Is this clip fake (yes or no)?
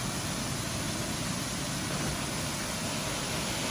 no